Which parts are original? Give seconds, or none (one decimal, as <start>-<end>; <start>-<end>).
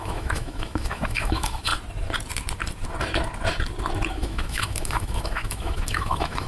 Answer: 1.7-4.1